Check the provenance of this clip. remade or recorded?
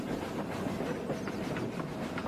recorded